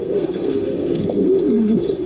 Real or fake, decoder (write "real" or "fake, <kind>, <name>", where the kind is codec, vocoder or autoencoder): fake, codec, SNAC